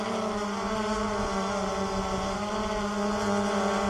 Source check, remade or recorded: recorded